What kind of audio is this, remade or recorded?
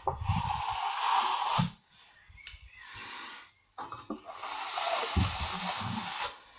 recorded